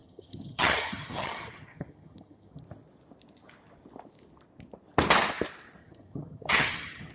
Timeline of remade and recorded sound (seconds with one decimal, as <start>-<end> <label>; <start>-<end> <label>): 0.0-2.6 remade; 2.6-5.8 recorded; 5.8-7.1 remade